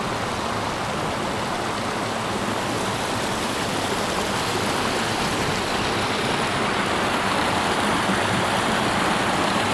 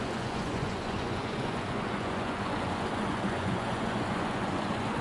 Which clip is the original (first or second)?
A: first